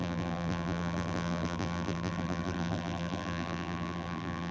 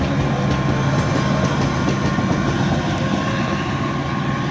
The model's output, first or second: first